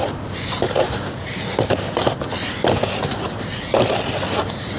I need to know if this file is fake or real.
real